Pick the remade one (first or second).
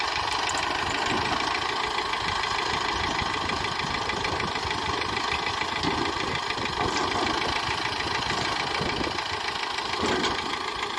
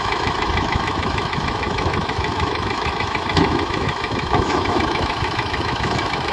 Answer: second